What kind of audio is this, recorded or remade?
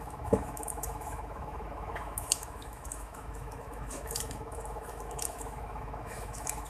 remade